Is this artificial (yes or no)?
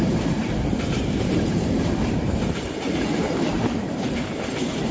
yes